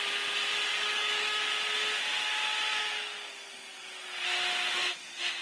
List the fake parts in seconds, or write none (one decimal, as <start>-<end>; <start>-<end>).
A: 0.7-1.5; 2.8-3.5